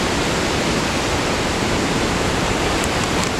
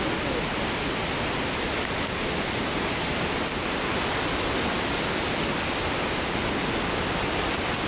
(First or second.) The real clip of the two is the second